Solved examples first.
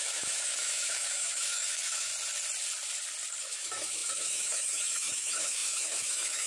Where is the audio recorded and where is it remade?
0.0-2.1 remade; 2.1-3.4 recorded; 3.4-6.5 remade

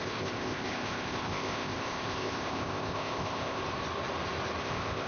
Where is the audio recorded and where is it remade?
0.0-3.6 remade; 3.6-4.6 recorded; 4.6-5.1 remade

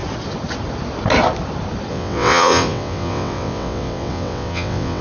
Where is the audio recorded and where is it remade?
0.0-1.9 recorded; 1.9-5.0 remade

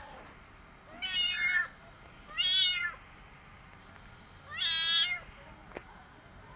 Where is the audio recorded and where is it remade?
0.0-5.8 recorded; 5.8-6.6 remade